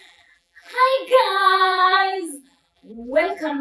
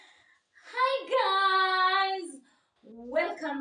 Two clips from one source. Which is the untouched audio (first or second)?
second